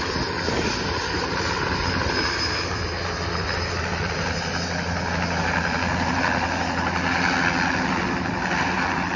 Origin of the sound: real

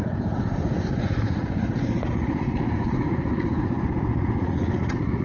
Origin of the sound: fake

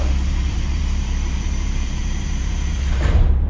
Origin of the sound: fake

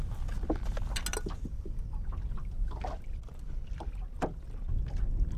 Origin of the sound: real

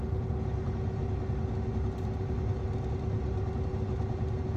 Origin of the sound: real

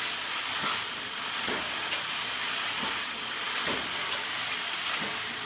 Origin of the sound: real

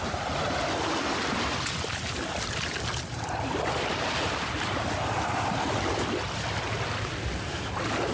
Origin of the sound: real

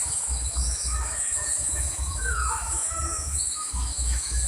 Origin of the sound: fake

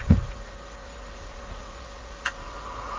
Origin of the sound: fake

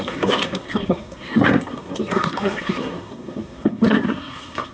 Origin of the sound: fake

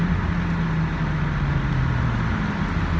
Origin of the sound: real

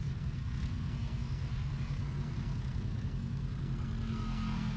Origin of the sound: fake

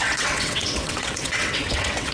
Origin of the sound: fake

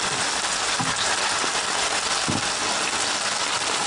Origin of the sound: real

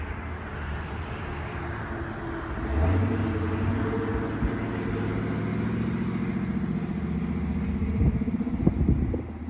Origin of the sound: real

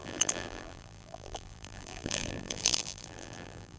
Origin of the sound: fake